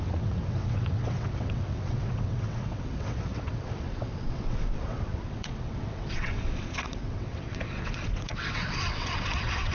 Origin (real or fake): fake